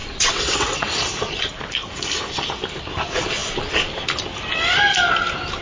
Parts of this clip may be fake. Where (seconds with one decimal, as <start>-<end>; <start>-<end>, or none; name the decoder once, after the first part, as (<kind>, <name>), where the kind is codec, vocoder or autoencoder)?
0.0-0.9 (vocoder, WaveNeXt)